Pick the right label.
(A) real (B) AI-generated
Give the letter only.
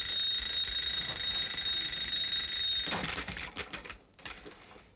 A